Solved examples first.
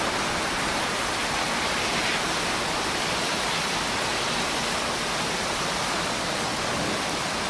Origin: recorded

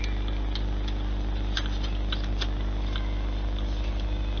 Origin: recorded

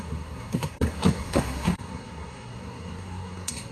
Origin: remade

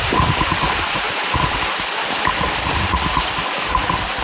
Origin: recorded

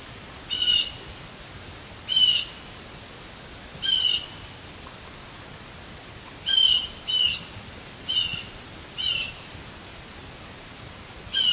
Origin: recorded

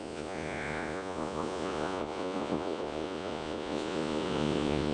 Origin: remade